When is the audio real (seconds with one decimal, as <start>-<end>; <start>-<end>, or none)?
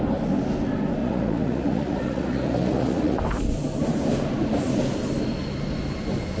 0.0-1.0; 3.2-6.4